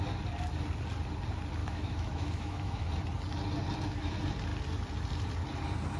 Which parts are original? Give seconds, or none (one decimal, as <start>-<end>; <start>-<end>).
0.0-1.6; 2.9-6.0